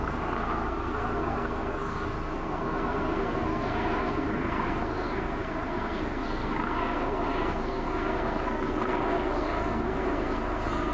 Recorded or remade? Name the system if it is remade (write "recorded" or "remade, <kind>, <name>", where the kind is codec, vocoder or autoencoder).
remade, codec, SNAC